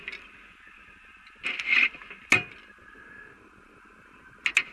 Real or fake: real